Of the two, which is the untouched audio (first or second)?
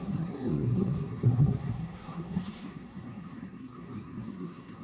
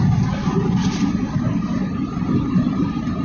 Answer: second